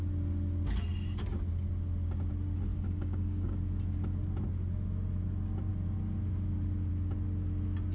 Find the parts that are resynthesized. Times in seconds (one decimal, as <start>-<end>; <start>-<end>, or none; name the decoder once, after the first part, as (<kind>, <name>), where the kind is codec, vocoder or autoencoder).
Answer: 2.7-3.6 (codec, DAC)